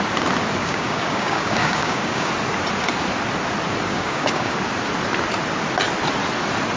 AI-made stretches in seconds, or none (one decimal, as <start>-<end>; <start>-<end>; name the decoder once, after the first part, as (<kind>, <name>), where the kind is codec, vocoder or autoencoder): 0.6-2.3 (codec, DAC); 3.9-4.5